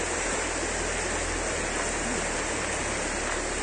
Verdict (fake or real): real